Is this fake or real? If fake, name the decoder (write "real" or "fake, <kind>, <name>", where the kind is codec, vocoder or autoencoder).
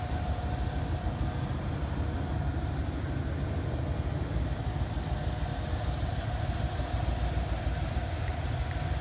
real